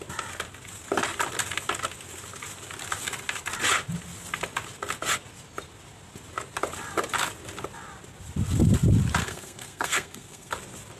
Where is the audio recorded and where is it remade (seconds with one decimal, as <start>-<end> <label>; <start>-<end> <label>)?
0.0-9.2 recorded; 9.2-10.5 remade; 10.5-11.0 recorded